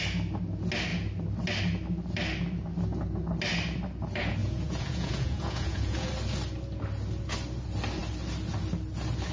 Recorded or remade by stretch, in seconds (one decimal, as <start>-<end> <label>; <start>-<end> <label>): 0.0-4.4 recorded; 4.4-6.1 remade; 6.1-9.3 recorded